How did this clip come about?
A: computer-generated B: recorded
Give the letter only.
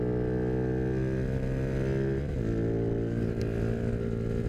B